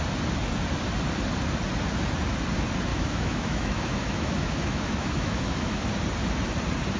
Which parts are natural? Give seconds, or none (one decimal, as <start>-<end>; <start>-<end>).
0.0-2.9; 5.9-7.0